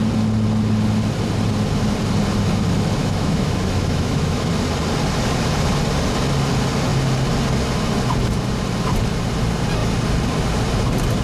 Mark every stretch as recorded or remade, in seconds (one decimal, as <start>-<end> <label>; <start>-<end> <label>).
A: 0.0-3.0 recorded; 3.0-4.5 remade; 4.5-11.2 recorded